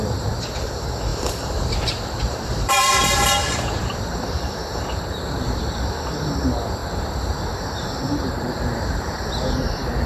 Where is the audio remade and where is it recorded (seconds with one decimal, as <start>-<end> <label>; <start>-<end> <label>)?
0.0-10.1 remade